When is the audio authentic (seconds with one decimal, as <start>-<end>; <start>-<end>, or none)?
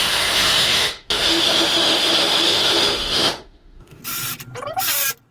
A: 4.0-5.3